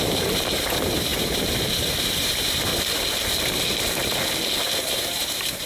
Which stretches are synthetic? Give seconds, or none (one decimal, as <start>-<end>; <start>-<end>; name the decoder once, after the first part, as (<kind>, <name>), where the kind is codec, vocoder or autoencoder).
0.0-2.7 (vocoder, BigVGAN v2); 4.6-5.7